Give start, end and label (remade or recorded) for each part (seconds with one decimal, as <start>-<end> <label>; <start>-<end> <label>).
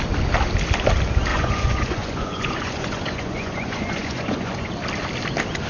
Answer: 0.0-1.3 recorded; 1.3-4.7 remade; 4.7-5.7 recorded